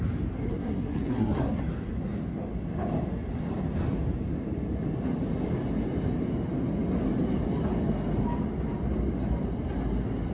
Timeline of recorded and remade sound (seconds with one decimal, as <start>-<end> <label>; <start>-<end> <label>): 0.0-0.4 recorded; 0.4-1.6 remade; 1.6-10.3 recorded